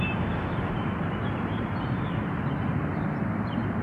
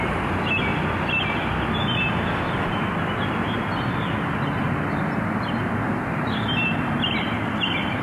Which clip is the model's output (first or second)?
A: first